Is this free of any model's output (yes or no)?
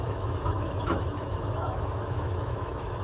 no